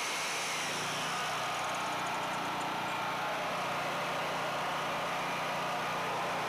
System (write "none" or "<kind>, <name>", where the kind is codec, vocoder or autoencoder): none